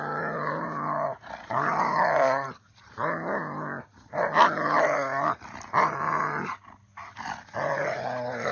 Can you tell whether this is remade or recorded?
recorded